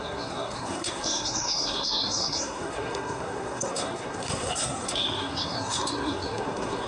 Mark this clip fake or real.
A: fake